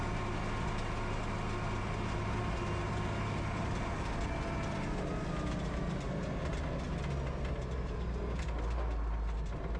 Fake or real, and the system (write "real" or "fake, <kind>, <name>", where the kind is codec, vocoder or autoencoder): real